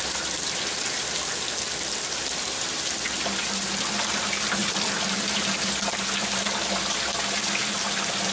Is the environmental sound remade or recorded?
recorded